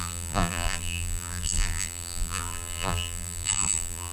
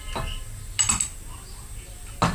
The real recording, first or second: second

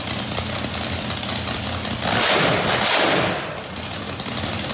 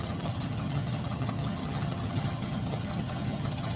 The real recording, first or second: first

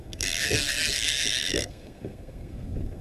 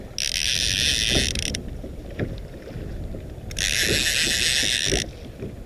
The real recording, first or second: second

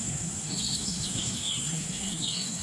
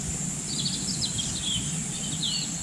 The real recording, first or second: second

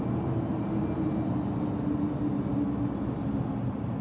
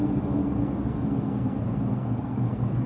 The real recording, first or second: first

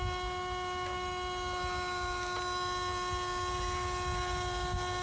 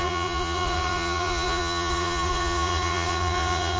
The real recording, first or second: first